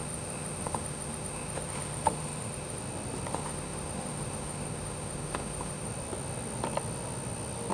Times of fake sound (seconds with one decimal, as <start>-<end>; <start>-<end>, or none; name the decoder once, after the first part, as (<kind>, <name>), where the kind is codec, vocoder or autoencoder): 0.0-2.8 (autoencoder, DAC-VAE); 3.3-5.9